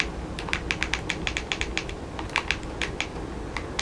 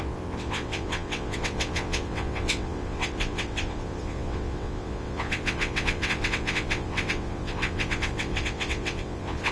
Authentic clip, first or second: first